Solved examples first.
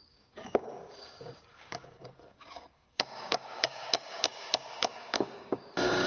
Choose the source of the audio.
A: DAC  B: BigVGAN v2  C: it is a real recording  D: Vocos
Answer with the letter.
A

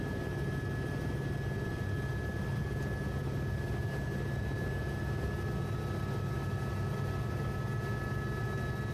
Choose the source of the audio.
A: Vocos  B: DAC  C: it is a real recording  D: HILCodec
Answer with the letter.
C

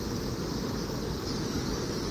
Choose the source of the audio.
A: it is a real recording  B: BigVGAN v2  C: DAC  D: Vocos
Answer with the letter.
C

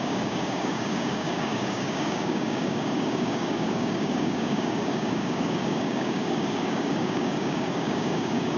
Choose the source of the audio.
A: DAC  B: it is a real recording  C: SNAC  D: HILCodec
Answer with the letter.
A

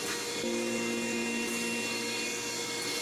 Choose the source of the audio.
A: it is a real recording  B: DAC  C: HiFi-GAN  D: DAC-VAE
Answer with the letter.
B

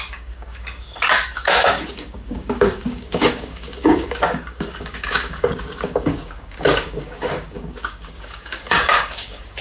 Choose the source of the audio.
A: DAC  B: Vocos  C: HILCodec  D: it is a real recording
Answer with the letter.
A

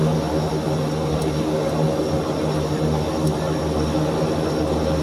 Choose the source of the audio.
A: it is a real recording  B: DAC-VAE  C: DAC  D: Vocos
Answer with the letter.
A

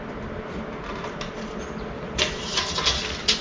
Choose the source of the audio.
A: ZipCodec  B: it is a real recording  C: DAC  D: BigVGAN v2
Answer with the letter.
B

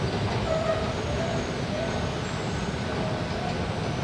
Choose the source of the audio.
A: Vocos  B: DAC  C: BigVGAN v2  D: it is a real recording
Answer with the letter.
D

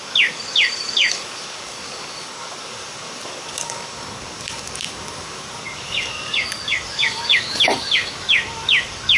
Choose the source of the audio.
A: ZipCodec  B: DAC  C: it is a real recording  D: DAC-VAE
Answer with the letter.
B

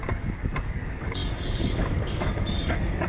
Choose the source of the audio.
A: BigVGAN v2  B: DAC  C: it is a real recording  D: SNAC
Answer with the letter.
B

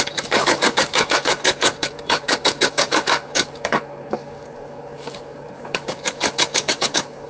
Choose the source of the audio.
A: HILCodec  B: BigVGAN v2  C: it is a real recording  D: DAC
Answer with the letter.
D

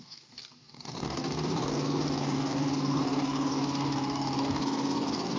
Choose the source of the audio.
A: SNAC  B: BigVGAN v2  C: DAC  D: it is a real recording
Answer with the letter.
C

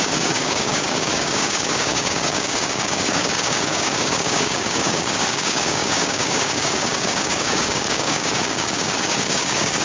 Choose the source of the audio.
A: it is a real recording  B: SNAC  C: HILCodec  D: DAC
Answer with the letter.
D